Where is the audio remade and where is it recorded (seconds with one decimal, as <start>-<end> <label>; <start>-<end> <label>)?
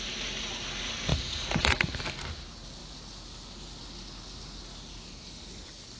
0.0-1.1 recorded; 1.1-2.0 remade; 2.0-6.0 recorded